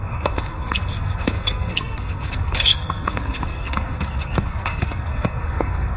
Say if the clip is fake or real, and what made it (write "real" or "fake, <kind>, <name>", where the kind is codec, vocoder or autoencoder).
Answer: fake, codec, SNAC